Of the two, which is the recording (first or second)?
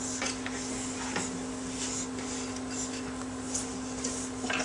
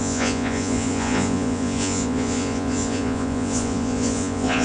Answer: first